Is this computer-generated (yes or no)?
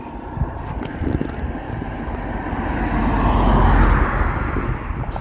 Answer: no